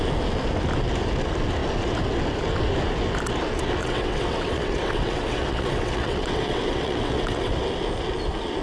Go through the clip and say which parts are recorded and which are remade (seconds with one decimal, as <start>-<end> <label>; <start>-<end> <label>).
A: 0.0-3.8 recorded; 3.8-7.6 remade; 7.6-8.6 recorded